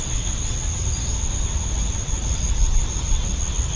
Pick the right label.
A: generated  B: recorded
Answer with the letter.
B